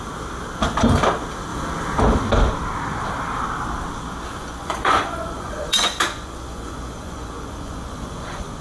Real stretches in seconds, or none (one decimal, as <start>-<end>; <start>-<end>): 0.0-4.4

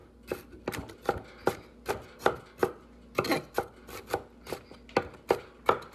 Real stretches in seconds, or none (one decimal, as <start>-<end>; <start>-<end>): 0.0-5.9